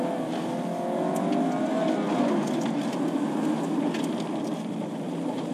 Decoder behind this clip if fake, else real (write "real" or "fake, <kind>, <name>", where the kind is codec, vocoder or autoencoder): real